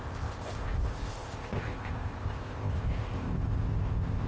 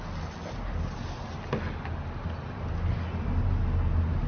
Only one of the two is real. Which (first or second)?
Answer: second